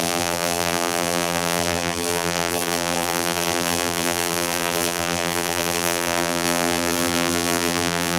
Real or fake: fake